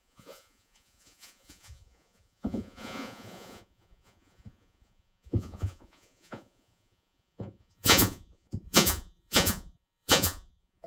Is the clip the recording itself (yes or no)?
no